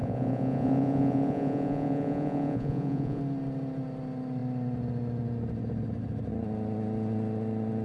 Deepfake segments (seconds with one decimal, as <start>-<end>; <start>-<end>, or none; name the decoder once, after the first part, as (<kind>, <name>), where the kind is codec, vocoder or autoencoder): 0.0-3.2 (vocoder, Vocos)